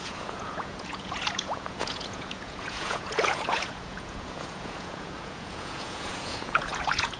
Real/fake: fake